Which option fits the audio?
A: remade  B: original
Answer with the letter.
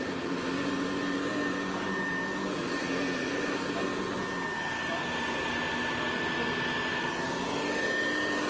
B